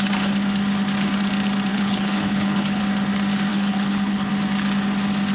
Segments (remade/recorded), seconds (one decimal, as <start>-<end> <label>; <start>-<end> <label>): 0.0-1.7 recorded; 1.7-2.8 remade; 2.8-3.5 recorded; 3.5-4.3 remade; 4.3-5.3 recorded